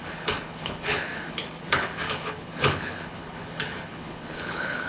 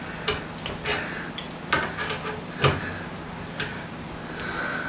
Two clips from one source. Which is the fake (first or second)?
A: first